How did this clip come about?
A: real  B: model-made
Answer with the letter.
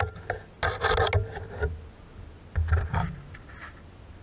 A